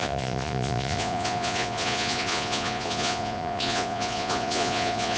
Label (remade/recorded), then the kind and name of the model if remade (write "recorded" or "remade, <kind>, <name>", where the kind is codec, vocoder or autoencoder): remade, vocoder, Vocos